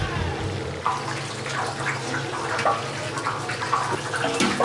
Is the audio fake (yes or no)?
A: no